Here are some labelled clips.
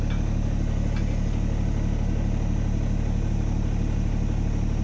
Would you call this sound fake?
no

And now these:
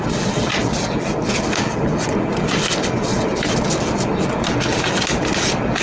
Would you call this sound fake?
no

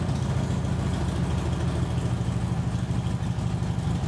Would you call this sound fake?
no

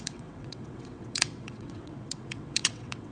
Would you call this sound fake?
yes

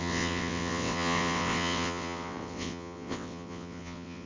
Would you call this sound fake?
yes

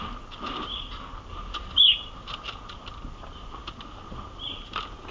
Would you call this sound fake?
no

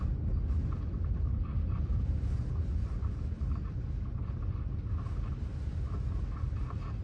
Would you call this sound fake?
no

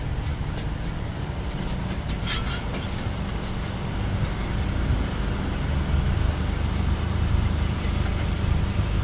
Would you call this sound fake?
no